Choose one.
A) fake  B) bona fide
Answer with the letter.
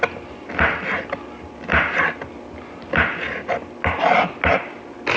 B